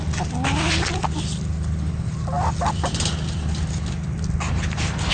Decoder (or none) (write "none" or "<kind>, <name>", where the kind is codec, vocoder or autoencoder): none